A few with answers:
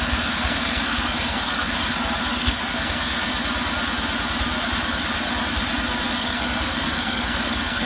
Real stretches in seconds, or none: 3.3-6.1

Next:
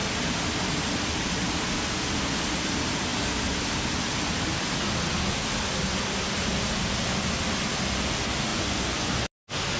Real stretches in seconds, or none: 0.0-8.5; 9.1-9.8

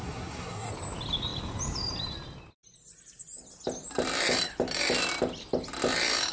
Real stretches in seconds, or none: 0.7-6.3

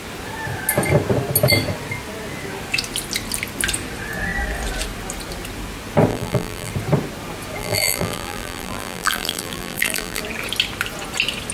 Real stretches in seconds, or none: 0.0-6.1; 6.7-7.6; 10.2-11.5

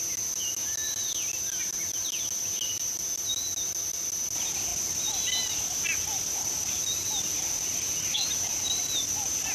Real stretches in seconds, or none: 0.0-9.5

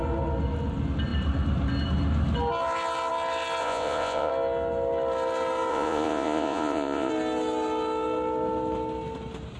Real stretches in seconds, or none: 0.0-3.6; 4.3-5.7; 7.1-9.6

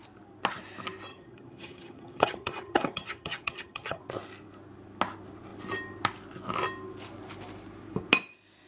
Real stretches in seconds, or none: 0.0-1.1; 4.0-8.7